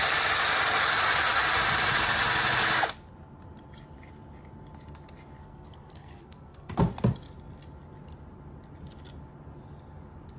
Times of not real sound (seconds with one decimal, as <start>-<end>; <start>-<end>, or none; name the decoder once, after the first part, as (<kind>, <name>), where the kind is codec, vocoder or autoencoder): 5.4-6.8 (codec, SNAC)